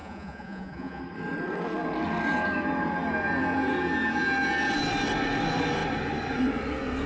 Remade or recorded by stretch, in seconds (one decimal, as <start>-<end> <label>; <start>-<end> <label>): 0.0-1.0 remade; 1.0-7.1 recorded